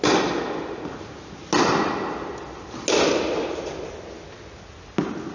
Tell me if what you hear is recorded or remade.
recorded